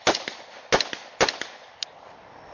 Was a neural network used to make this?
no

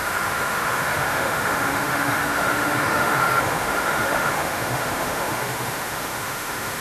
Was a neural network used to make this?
yes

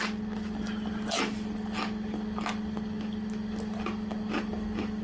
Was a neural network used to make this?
no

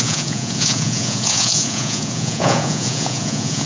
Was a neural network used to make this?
yes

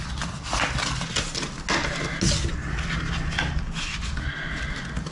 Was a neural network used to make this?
no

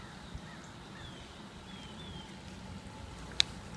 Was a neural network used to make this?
no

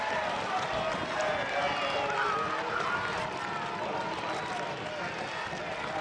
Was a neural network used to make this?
no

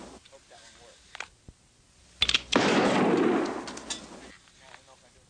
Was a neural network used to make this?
no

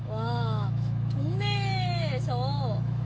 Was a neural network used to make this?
yes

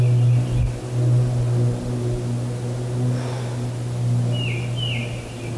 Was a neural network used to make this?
no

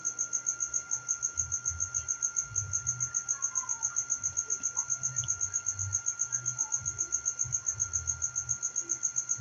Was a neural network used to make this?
no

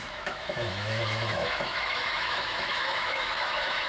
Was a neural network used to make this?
yes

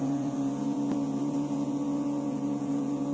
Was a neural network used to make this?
yes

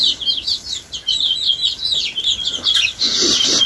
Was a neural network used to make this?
no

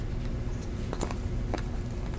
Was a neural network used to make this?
no